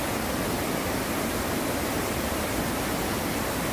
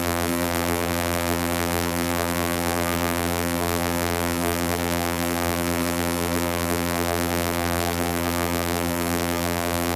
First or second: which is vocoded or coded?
second